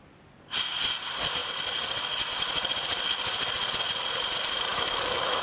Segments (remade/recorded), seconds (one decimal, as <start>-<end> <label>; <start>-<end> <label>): 0.0-4.7 recorded; 4.7-5.4 remade

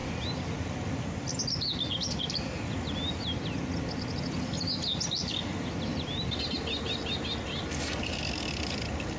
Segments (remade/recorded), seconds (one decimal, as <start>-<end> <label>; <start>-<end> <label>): 0.0-9.2 recorded

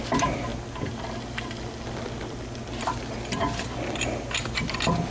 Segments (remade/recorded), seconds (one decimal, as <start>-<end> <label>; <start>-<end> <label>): 0.0-5.1 recorded

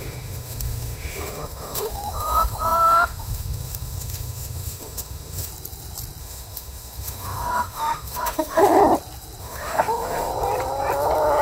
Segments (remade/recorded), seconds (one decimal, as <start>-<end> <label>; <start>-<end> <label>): 0.0-5.5 remade; 5.5-6.2 recorded; 6.2-8.8 remade; 8.8-9.4 recorded; 9.4-10.3 remade; 10.3-11.4 recorded

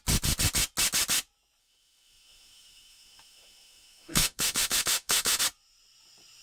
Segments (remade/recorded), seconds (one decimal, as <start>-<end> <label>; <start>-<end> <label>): 0.0-1.6 recorded; 1.6-5.4 remade; 5.4-6.4 recorded

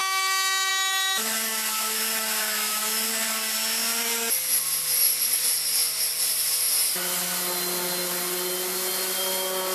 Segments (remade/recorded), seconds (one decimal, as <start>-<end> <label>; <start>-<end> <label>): 0.0-1.2 recorded; 1.2-3.1 remade; 3.1-9.7 recorded